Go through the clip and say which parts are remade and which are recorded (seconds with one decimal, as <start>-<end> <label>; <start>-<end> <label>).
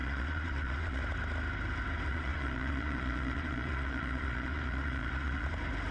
0.0-1.0 remade; 1.0-2.1 recorded; 2.1-5.5 remade; 5.5-5.9 recorded